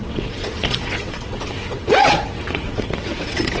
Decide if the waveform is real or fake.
fake